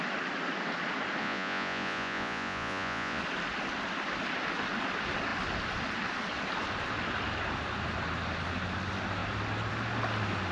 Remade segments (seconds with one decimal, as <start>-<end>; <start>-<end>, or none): 1.2-3.2